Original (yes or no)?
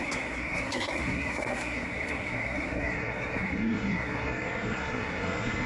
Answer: no